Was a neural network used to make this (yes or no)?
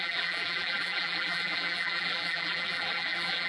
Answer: yes